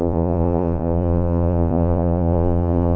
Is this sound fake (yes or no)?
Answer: yes